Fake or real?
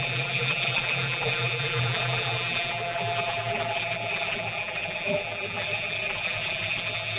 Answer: fake